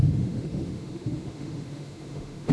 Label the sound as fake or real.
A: fake